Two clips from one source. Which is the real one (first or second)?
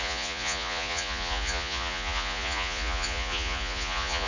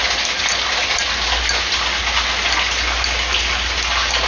second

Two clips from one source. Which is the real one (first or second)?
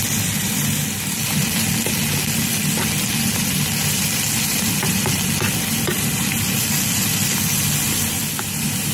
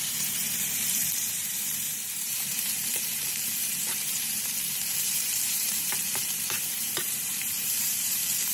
first